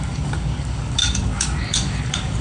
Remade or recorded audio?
remade